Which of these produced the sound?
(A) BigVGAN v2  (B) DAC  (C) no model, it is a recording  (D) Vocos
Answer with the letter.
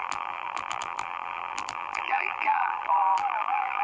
A